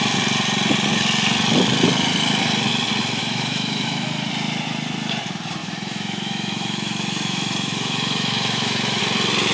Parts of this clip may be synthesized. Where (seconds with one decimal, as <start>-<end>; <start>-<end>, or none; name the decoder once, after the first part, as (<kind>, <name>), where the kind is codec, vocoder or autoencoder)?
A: 3.2-4.3 (autoencoder, DAC-VAE); 5.6-9.0